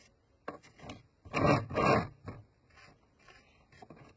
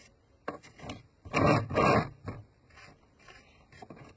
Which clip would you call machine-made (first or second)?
second